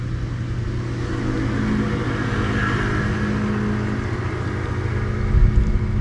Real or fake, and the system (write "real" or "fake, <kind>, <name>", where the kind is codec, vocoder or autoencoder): real